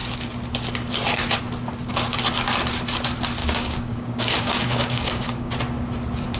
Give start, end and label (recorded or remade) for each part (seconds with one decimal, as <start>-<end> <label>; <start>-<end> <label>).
0.0-3.4 recorded; 3.4-5.5 remade; 5.5-6.4 recorded